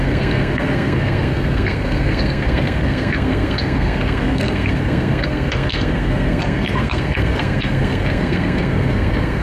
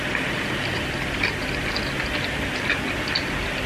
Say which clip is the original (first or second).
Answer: second